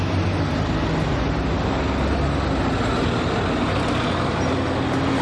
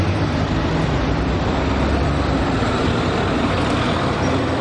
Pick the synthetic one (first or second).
second